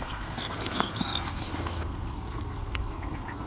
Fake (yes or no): yes